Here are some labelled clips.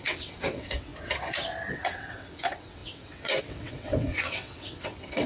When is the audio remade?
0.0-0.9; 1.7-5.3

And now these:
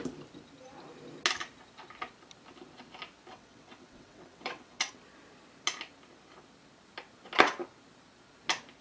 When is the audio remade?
3.3-4.9

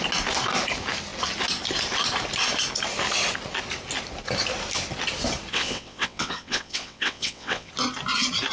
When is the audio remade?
5.5-7.7

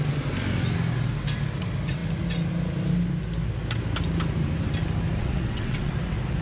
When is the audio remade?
5.2-5.9

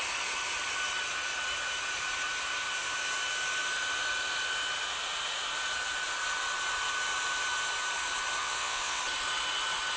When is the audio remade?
8.4-9.0

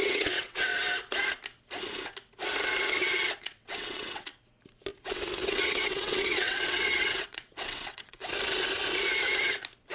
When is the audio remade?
0.0-0.7; 3.4-4.3; 5.1-8.2

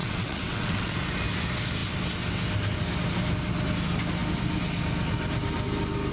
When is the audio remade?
0.0-0.9